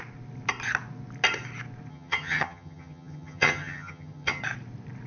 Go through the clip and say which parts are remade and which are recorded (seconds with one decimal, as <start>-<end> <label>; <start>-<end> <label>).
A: 0.0-1.9 recorded; 1.9-4.4 remade; 4.4-5.1 recorded